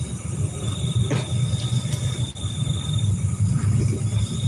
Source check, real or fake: fake